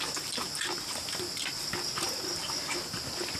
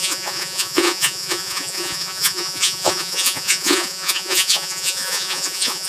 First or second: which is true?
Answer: first